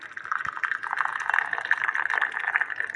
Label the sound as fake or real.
real